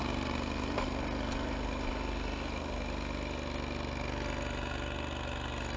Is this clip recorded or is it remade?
recorded